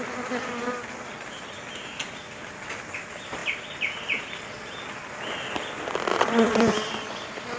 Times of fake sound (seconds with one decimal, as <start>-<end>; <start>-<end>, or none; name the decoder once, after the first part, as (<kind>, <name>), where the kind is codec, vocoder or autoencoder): 6.1-6.7 (vocoder, Vocos)